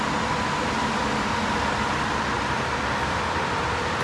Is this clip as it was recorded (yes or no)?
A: yes